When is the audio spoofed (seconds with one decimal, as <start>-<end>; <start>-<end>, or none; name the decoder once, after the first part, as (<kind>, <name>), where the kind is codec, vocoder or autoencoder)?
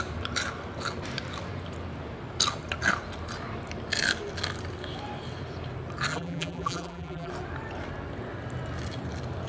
6.1-7.3 (vocoder, BigVGAN v2)